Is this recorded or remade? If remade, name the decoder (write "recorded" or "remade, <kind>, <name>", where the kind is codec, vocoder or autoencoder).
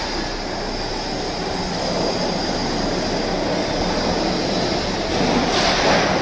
recorded